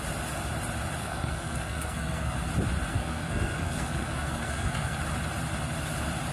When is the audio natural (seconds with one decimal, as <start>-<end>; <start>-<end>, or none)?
0.0-1.0; 2.5-2.9; 5.0-6.3